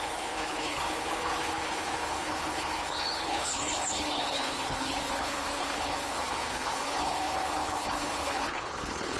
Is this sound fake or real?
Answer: fake